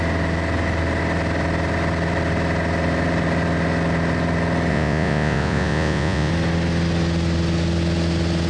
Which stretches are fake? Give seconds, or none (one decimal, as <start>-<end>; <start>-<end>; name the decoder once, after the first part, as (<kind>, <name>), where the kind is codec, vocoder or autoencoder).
4.7-6.3 (vocoder, Vocos)